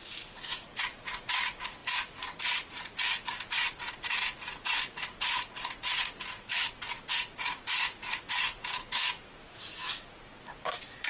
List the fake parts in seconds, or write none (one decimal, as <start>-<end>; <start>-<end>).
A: 0.0-11.1